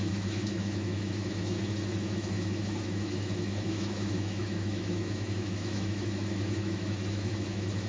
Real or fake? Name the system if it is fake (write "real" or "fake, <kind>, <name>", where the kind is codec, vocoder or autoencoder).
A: fake, autoencoder, DAC-VAE